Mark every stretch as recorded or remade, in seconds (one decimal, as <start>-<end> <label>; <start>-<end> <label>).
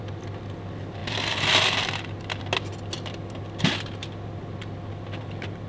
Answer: 0.0-5.7 recorded